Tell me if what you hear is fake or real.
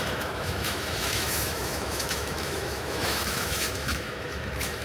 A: fake